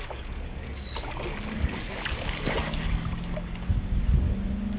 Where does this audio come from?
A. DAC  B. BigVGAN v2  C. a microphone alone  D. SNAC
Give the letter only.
A